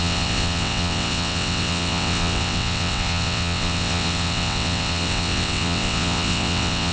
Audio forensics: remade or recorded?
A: remade